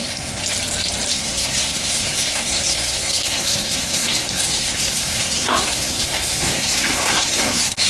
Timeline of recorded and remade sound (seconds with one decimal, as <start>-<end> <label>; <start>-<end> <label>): 0.0-0.4 remade; 0.4-1.1 recorded; 1.1-7.9 remade